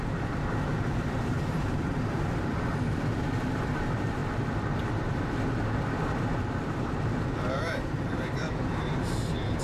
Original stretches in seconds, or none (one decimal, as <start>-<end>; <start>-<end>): 4.2-6.2